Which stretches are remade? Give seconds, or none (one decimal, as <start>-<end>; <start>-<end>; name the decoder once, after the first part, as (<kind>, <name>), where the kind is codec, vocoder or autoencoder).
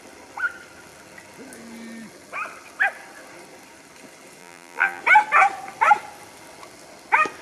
4.4-5.0 (vocoder, BigVGAN v2)